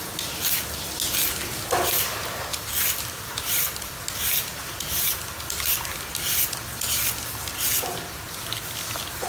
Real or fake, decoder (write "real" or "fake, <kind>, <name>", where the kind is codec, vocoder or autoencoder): real